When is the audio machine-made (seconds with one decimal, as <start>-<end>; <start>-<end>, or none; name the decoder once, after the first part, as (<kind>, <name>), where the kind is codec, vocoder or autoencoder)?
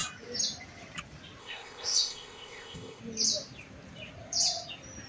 1.4-3.0 (codec, ZipCodec)